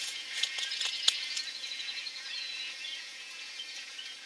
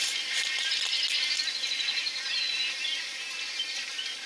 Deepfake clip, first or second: first